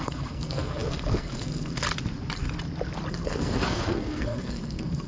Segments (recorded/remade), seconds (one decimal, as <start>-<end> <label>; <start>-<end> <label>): 0.0-1.8 remade; 1.8-3.1 recorded; 3.1-5.1 remade